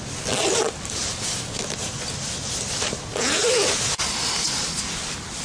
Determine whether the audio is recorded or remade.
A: recorded